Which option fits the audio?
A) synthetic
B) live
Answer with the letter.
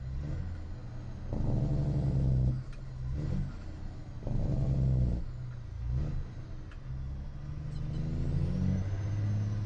B